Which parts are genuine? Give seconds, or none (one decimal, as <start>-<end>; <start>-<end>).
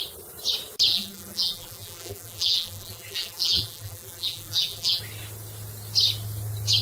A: 0.0-0.9; 5.0-6.8